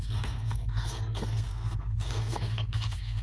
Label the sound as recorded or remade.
remade